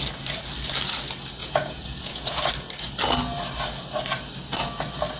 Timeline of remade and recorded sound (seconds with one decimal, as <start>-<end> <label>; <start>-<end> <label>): 0.0-1.4 recorded; 1.4-2.5 remade; 2.5-5.2 recorded